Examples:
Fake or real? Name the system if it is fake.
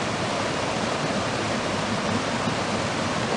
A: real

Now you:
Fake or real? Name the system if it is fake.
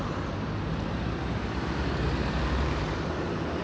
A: fake, vocoder, BigVGAN v2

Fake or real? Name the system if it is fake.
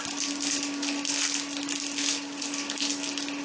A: real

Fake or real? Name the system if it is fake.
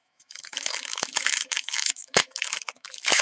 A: fake, autoencoder, DAC-VAE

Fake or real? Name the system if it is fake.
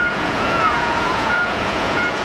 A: fake, vocoder, Vocos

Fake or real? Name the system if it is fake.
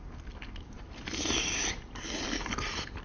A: real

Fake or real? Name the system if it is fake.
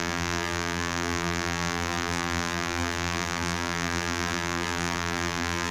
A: fake, vocoder, BigVGAN v2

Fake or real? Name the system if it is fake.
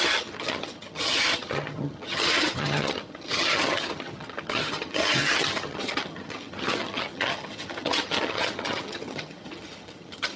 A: fake, vocoder, HiFi-GAN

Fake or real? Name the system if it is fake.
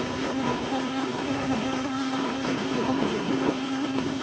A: fake, codec, SNAC